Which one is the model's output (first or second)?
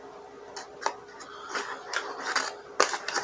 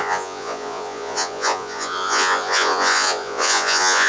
second